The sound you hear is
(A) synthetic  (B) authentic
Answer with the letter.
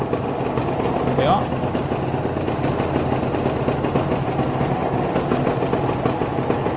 B